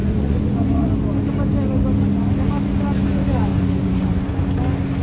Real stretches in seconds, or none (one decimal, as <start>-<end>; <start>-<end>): 0.9-3.5; 4.4-5.0